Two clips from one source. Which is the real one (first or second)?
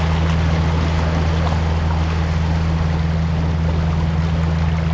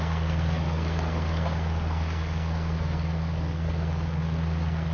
first